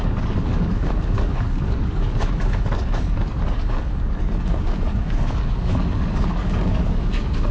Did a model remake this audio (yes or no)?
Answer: yes